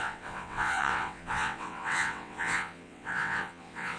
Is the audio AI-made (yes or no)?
yes